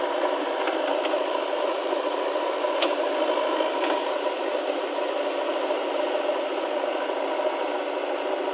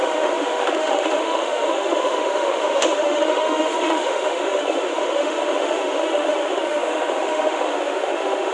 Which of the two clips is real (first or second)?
first